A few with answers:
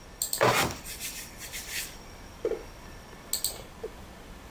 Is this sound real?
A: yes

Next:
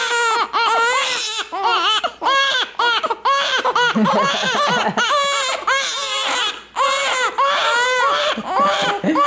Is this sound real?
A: yes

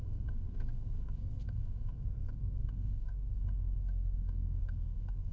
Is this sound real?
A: no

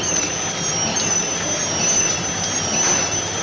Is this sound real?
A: yes